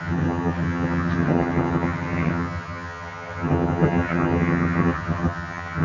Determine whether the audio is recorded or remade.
remade